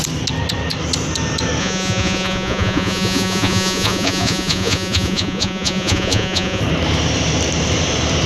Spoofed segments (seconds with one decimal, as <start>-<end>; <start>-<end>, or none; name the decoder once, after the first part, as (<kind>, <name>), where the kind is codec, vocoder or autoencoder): 1.6-6.6 (vocoder, Vocos)